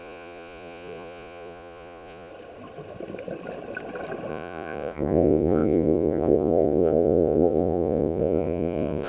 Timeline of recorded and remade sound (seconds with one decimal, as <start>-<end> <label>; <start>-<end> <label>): 0.0-2.3 remade; 2.3-4.3 recorded; 4.3-9.1 remade